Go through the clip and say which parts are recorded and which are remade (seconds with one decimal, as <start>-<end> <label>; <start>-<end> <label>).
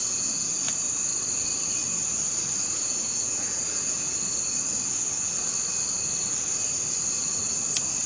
0.0-0.5 remade; 0.5-2.7 recorded; 2.7-4.2 remade; 4.2-8.1 recorded